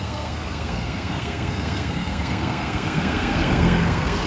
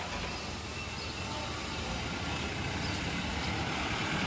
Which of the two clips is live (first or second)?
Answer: second